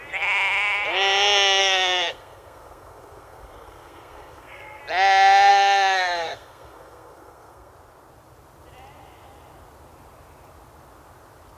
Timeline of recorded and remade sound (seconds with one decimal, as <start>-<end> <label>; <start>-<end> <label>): 0.0-1.6 recorded; 1.6-4.8 remade; 4.8-5.5 recorded; 5.5-7.7 remade; 7.7-11.6 recorded